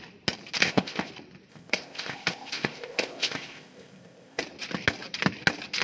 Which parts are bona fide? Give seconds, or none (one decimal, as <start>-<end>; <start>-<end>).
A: 0.0-0.6; 1.1-1.5; 4.4-5.8